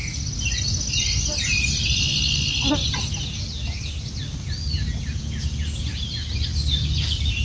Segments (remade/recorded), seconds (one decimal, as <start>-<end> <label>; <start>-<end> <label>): 0.0-7.4 recorded